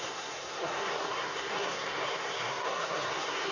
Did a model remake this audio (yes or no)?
yes